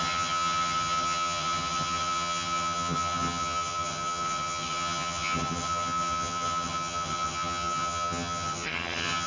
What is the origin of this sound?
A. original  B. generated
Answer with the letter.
B